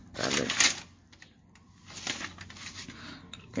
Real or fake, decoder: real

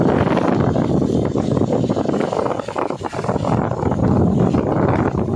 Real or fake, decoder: real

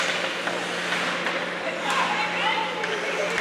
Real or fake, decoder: real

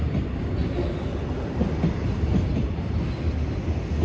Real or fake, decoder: real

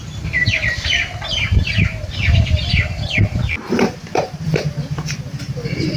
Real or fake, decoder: fake, vocoder, BigVGAN v2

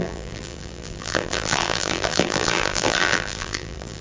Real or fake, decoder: fake, vocoder, BigVGAN v2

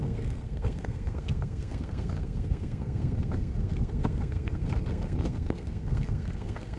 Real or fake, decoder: fake, codec, SNAC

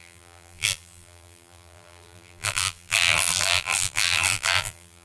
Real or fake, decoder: fake, vocoder, BigVGAN v2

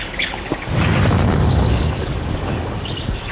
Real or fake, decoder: fake, codec, DAC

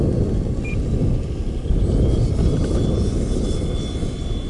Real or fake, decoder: real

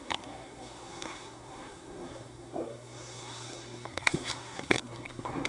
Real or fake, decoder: fake, codec, SNAC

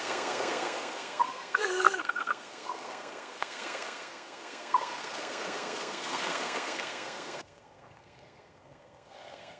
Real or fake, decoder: fake, codec, SNAC